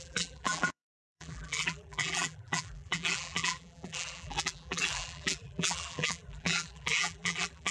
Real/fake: fake